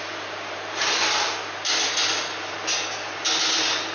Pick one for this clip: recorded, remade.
recorded